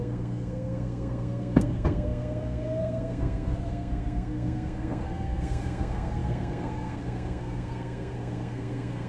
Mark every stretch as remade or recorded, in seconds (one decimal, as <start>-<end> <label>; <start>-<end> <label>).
0.0-9.1 remade